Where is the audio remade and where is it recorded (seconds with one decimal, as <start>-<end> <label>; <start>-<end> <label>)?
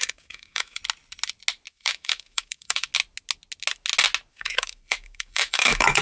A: 0.0-0.8 remade; 0.8-1.7 recorded; 1.7-2.9 remade; 2.9-4.3 recorded; 4.3-6.0 remade